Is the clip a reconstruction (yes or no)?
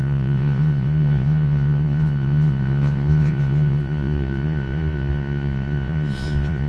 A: yes